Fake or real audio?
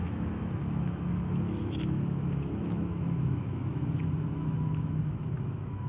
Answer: fake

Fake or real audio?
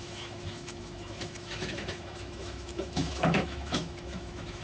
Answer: fake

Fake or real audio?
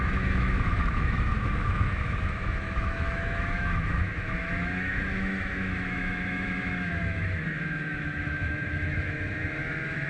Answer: fake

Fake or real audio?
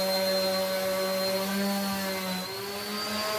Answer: real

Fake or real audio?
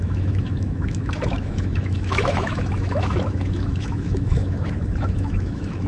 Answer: fake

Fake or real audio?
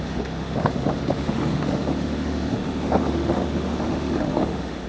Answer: fake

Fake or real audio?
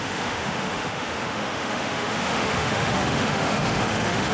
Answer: fake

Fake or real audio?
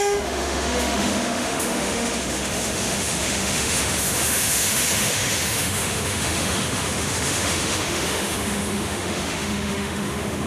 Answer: fake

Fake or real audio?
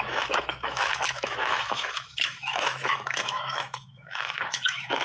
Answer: fake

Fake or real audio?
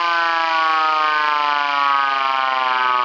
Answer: real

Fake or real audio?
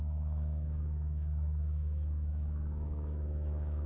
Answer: fake